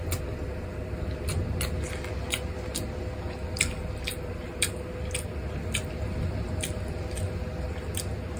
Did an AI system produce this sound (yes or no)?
no